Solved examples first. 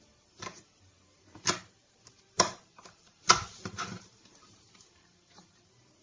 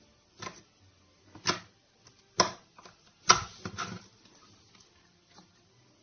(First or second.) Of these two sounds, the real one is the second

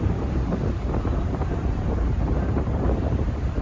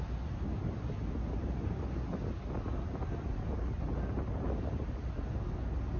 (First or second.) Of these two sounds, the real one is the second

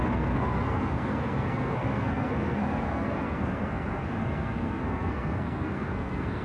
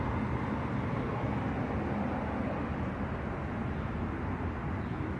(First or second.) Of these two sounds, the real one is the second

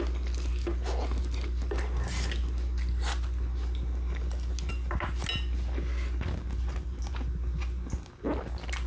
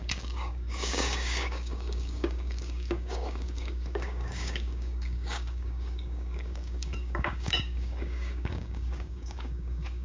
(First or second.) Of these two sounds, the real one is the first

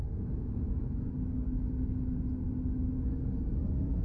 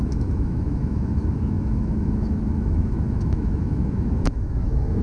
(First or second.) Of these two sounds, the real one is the first